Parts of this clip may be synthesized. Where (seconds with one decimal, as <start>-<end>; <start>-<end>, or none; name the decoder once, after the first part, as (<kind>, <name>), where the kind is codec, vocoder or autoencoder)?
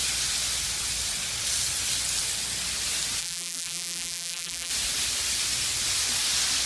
3.2-4.7 (vocoder, BigVGAN v2)